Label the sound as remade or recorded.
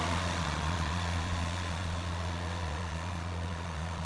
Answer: remade